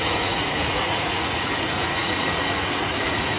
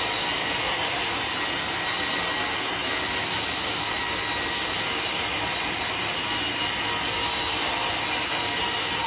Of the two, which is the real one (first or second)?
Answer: second